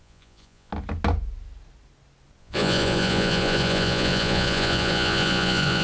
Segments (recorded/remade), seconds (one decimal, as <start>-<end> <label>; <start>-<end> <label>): 0.0-0.7 remade; 0.7-2.4 recorded; 2.4-5.8 remade